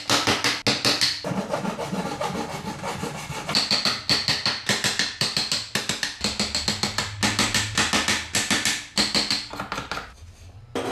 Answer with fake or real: real